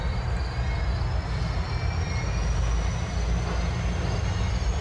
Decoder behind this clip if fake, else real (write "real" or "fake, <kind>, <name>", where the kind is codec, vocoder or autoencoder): real